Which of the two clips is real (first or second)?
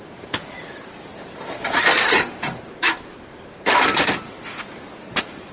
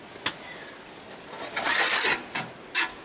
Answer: second